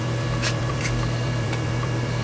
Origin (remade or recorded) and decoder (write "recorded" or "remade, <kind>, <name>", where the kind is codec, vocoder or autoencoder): remade, vocoder, BigVGAN v2